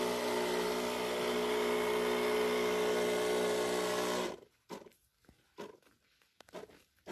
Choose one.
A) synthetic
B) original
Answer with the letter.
B